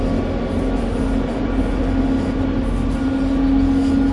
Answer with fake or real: real